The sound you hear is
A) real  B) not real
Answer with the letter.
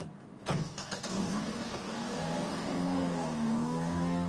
B